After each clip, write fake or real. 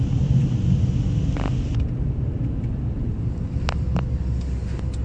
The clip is real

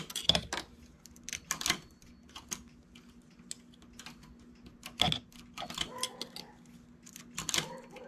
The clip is real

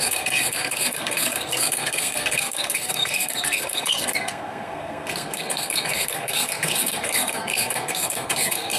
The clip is fake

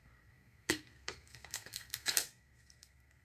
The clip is fake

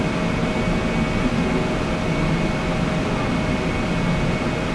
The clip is real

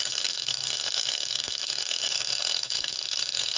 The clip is fake